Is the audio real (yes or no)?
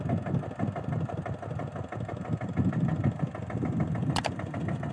yes